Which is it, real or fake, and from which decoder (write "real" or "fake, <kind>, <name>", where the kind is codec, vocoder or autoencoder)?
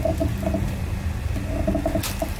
real